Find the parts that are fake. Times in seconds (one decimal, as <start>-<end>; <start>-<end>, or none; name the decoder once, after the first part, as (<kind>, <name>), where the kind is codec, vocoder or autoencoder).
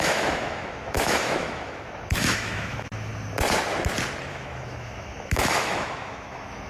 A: 0.0-3.1 (autoencoder, DAC-VAE); 4.3-6.7